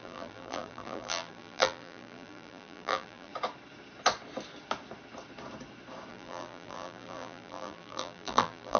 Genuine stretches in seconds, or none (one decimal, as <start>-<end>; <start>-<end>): 3.3-6.1